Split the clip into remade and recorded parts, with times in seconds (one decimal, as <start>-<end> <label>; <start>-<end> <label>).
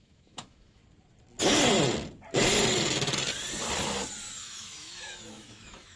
0.0-0.8 remade; 0.8-4.4 recorded; 4.4-6.0 remade